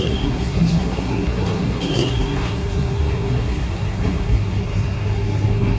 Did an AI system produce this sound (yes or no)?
yes